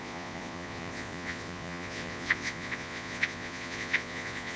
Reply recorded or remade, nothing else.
remade